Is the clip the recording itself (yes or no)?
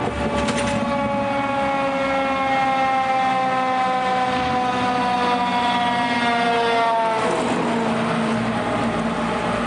yes